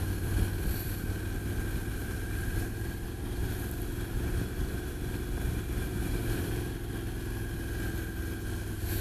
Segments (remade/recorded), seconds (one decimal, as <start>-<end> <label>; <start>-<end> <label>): 0.0-1.9 recorded; 1.9-6.9 remade; 6.9-9.0 recorded